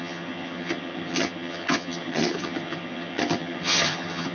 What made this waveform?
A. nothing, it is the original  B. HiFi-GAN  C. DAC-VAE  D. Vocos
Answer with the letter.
B